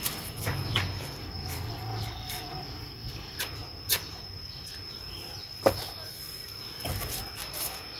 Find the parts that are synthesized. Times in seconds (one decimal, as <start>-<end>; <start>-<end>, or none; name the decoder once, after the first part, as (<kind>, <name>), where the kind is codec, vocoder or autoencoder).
1.2-3.4 (codec, SNAC)